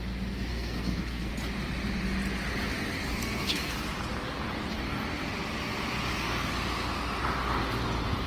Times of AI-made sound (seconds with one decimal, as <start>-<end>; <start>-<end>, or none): 0.5-1.3; 3.2-3.7